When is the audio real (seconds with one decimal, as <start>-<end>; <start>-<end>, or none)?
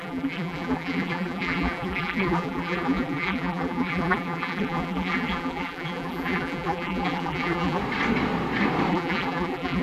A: 7.8-8.9